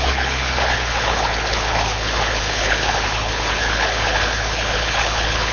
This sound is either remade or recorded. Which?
remade